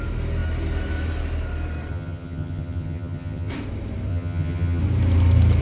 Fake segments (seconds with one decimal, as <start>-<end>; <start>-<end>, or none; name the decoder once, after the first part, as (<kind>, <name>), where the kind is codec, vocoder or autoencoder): 1.9-3.5 (vocoder, HiFi-GAN); 4.1-4.8